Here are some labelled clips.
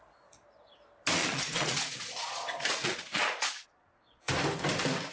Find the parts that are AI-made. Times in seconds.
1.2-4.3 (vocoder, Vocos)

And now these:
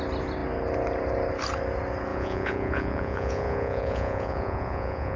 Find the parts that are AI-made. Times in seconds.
2.1-5.2 (vocoder, Vocos)

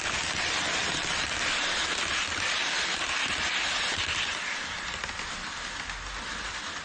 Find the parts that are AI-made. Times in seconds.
none

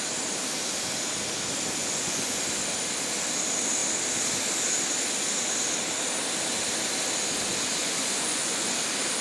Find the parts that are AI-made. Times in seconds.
1.8-2.4 (vocoder, Vocos); 7.8-8.7

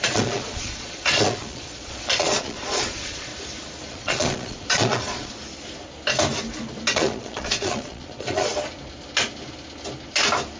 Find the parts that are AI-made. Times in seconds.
0.0-3.3 (vocoder, Vocos); 3.9-5.4; 6.9-8.5

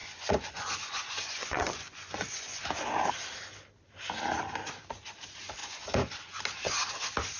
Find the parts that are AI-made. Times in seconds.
0.0-2.6 (vocoder, Vocos); 5.6-6.4